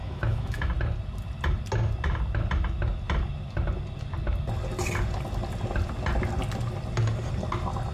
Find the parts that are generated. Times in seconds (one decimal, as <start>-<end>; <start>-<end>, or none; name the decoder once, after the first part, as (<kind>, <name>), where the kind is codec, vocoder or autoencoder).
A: 0.0-0.7 (autoencoder, DAC-VAE)